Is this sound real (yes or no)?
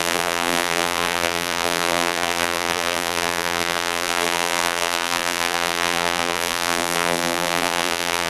no